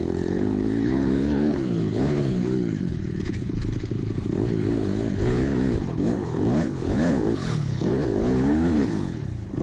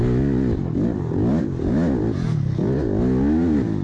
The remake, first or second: first